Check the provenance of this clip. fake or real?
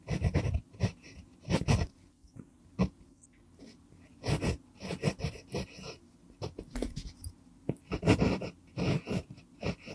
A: real